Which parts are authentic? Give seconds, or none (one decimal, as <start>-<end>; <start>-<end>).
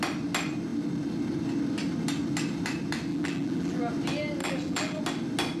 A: 0.0-3.1; 3.8-4.4; 5.0-5.6